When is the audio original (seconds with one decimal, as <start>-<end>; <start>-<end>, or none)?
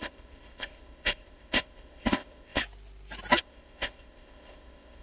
2.6-3.4